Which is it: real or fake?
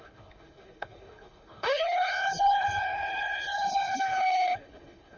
fake